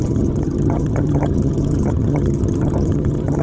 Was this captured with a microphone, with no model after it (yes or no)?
no